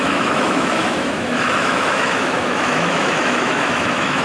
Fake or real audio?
fake